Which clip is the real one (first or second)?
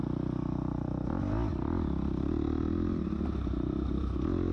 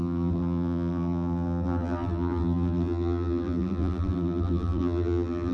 first